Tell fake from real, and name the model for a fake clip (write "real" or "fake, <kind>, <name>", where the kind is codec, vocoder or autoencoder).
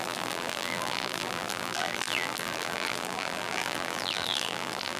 fake, vocoder, BigVGAN v2